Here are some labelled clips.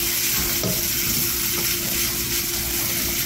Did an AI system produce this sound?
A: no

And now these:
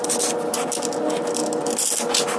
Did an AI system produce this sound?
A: no